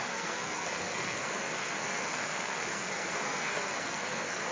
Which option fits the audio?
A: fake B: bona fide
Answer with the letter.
A